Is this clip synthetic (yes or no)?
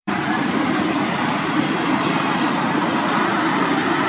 yes